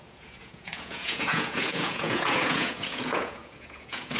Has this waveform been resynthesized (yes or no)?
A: yes